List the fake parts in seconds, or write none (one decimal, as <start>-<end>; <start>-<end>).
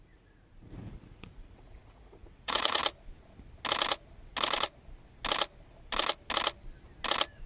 0.0-2.8